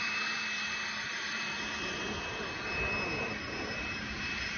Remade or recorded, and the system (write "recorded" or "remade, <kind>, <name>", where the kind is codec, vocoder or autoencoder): remade, vocoder, BigVGAN v2